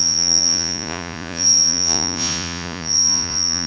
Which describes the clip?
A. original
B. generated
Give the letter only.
B